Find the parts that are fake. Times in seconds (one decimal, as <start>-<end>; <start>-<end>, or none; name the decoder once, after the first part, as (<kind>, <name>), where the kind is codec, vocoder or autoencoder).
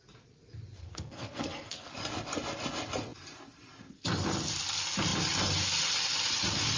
0.8-1.9 (codec, SNAC)